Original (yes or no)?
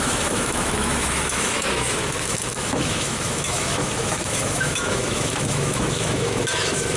no